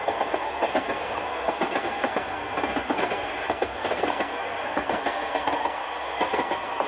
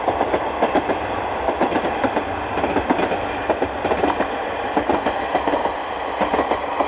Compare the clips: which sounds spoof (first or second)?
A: first